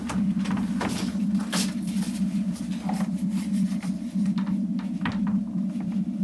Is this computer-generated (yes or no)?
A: no